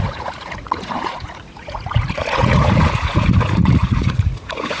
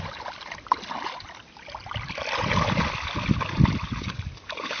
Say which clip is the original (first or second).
second